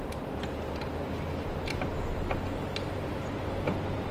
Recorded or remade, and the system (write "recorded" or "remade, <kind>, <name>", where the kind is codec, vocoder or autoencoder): recorded